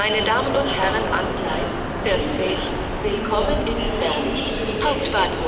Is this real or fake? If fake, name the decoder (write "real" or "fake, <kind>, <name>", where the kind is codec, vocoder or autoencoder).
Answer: real